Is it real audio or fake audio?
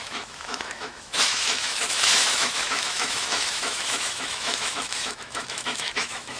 fake